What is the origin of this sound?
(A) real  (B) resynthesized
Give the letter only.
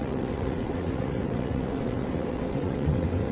B